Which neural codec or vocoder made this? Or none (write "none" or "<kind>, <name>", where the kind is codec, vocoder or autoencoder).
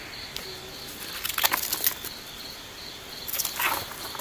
none